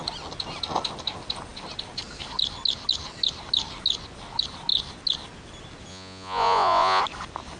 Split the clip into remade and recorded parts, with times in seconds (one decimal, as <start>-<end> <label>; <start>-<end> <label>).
0.0-5.9 recorded; 5.9-7.0 remade; 7.0-7.6 recorded